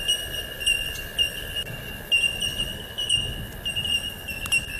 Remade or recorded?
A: recorded